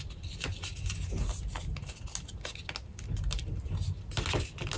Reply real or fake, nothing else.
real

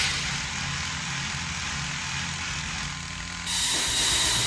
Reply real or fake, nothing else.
real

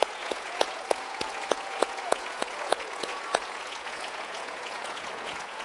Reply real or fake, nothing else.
fake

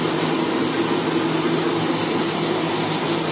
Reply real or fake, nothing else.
real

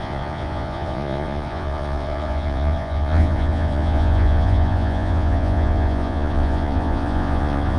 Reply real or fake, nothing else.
fake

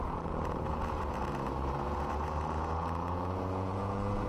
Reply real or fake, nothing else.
fake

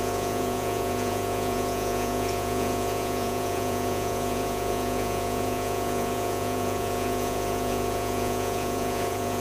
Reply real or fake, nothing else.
fake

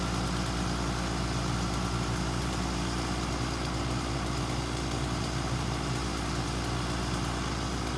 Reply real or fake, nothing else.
real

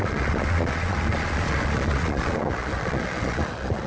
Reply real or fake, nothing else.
fake